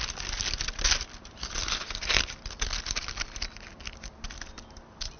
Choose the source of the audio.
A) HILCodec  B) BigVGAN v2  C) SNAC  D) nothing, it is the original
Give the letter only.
D